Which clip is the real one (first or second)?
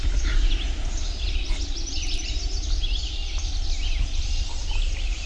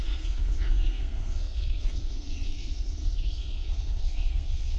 first